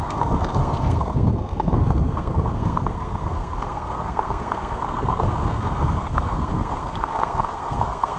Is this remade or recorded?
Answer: remade